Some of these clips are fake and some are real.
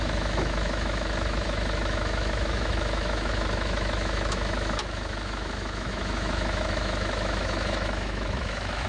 fake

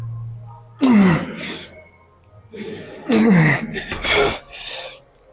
real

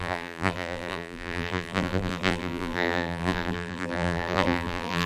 fake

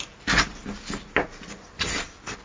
real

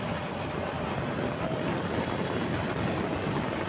real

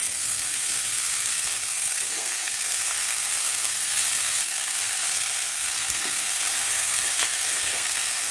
fake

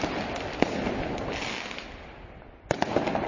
real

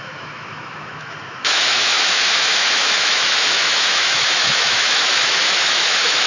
fake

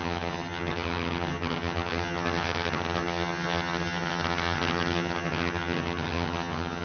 fake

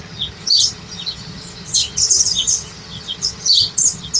fake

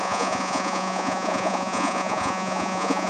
fake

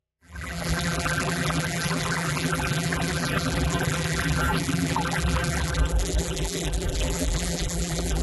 fake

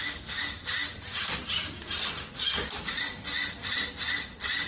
real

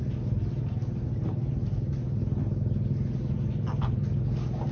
real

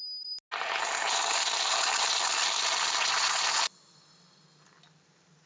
real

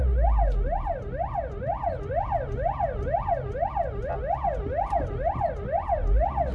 real